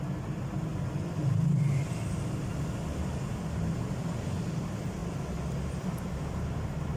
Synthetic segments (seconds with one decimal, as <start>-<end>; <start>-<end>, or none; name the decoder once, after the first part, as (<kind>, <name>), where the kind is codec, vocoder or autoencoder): 0.7-3.2 (vocoder, BigVGAN v2); 5.0-5.8